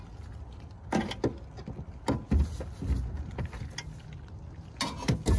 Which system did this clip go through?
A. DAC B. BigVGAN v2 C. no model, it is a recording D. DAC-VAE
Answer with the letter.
C